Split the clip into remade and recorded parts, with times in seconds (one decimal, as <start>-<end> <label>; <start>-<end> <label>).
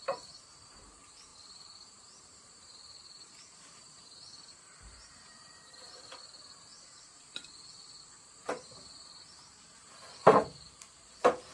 0.0-6.7 remade; 6.7-8.2 recorded; 8.2-11.5 remade